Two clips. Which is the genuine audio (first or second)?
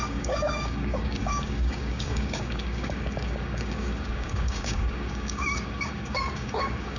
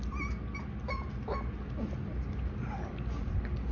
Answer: second